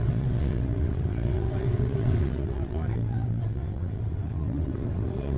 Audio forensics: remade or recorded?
remade